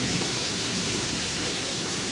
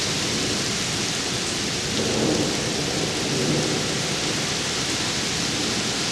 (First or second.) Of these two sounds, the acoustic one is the second